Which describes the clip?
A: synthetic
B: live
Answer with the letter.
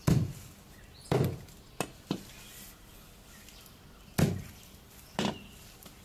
B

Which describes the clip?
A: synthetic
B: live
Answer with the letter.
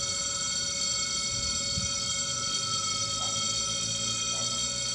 B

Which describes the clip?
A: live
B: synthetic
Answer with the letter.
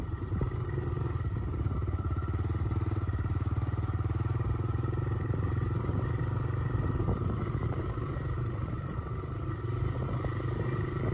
B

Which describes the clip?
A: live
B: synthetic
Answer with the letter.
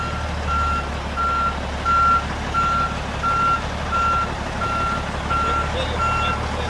A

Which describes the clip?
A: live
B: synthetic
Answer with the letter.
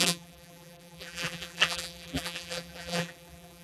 B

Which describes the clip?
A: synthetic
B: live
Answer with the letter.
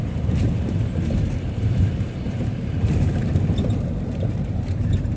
A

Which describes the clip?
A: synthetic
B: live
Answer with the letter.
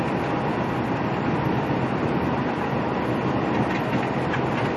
B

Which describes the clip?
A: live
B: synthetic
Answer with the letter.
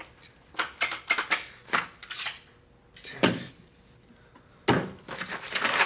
A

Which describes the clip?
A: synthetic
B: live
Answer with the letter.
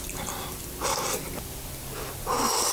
A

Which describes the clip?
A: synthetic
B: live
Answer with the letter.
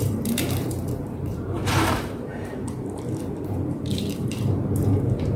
A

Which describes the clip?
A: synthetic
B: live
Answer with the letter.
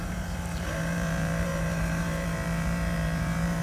A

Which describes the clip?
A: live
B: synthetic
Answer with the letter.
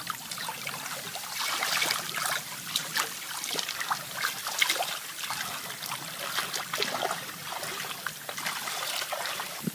A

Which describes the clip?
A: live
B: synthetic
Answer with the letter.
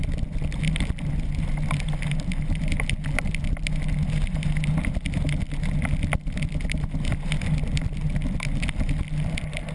A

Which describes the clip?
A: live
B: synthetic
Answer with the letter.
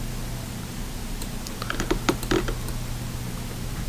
A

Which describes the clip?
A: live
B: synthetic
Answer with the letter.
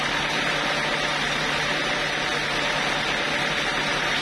A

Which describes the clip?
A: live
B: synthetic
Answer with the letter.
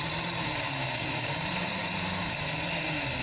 B